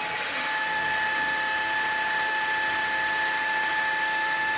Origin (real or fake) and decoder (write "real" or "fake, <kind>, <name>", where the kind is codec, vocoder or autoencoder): fake, autoencoder, DAC-VAE